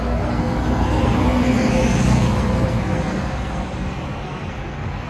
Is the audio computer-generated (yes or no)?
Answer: yes